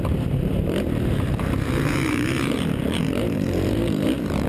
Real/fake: fake